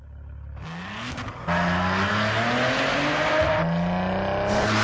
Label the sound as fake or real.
real